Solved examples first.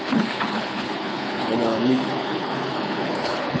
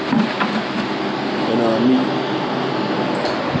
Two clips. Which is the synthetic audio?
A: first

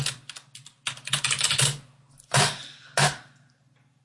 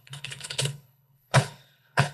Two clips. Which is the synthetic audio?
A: second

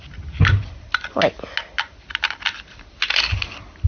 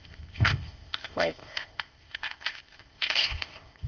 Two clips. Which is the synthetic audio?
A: second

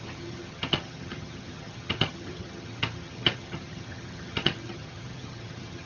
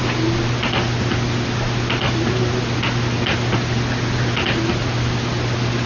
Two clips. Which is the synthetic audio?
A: first